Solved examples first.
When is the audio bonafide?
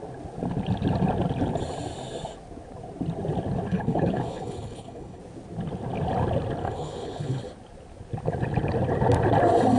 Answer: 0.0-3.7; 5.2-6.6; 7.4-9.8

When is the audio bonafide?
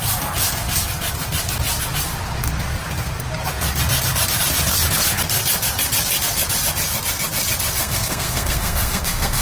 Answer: 0.0-7.8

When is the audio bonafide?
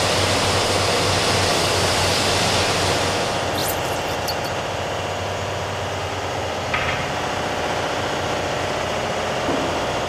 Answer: 0.0-1.5; 2.3-10.1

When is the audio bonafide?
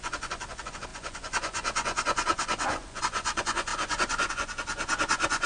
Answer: none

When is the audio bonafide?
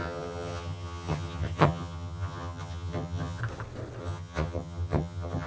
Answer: 3.4-4.0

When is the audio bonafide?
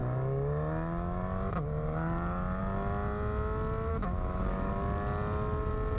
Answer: 0.0-3.9; 4.7-6.0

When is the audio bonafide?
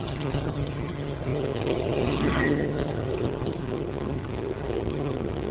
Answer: none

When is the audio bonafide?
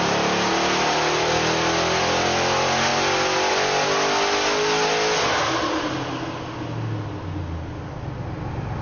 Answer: 0.0-8.8